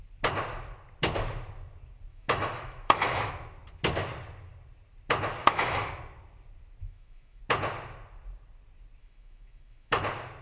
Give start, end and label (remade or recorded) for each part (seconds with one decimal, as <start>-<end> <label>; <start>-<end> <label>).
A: 0.0-2.1 recorded; 2.1-3.3 remade; 3.3-5.4 recorded; 5.4-5.9 remade; 5.9-6.8 recorded; 6.8-7.4 remade; 7.4-9.0 recorded; 9.0-10.0 remade; 10.0-10.4 recorded